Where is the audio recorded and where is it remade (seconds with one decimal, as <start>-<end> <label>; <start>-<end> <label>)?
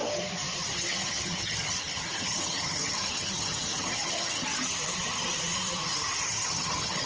0.0-0.7 recorded; 0.7-4.5 remade; 4.5-6.2 recorded; 6.2-7.1 remade